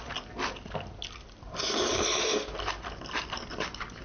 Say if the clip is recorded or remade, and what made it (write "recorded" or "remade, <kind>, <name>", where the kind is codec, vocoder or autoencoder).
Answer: recorded